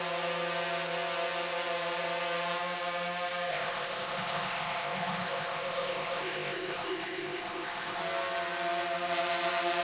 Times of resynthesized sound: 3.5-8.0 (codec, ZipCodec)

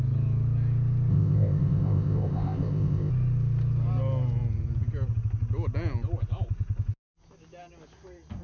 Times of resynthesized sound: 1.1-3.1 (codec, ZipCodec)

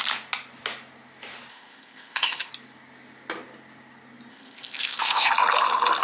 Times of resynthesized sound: 1.5-2.5 (codec, ZipCodec); 4.3-5.3